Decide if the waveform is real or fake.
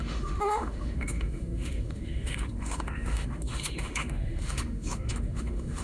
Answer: fake